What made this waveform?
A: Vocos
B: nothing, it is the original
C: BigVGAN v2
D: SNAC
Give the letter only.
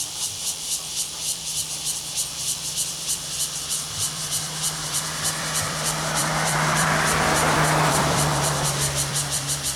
C